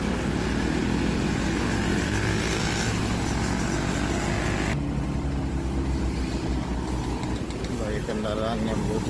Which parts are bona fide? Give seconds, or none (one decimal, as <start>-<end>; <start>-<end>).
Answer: 0.0-1.9; 2.6-9.1